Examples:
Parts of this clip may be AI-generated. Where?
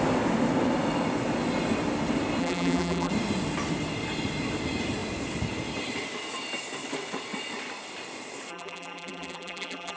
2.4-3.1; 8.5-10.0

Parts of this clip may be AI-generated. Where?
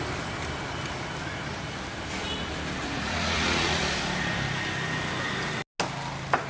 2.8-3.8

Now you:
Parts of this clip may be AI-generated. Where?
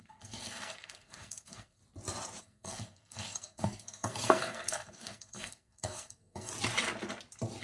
0.0-1.8; 2.4-6.5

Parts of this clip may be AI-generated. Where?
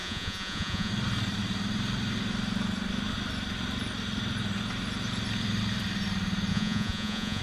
0.0-0.9; 6.5-7.4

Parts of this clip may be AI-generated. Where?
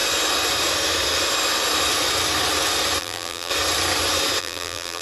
3.0-3.5; 4.4-5.0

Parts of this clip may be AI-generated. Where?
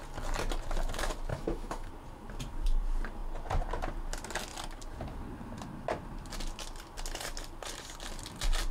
1.3-1.9